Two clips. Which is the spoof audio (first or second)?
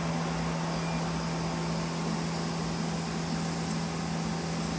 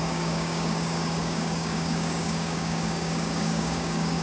second